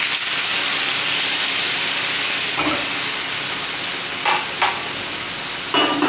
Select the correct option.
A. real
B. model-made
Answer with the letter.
A